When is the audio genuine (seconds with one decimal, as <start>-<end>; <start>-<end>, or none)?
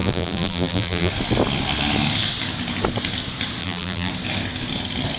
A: 1.1-3.6; 4.1-5.2